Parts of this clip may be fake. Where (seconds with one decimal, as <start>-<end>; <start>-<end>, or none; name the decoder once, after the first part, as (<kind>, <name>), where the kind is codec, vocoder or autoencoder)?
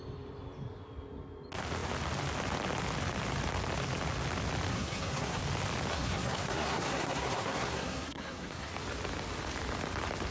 4.7-5.4 (codec, SNAC); 5.9-8.7